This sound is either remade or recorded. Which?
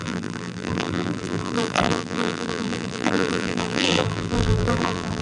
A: remade